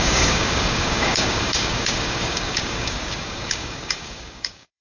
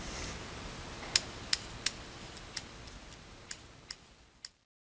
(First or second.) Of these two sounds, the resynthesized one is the first